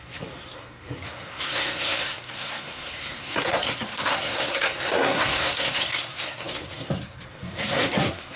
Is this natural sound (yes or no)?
no